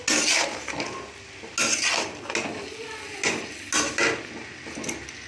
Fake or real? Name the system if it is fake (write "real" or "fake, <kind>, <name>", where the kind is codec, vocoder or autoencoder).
real